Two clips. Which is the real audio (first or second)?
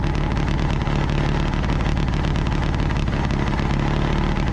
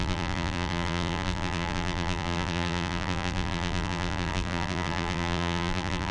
first